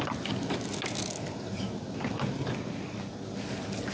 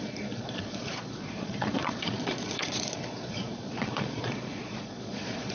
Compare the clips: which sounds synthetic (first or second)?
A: second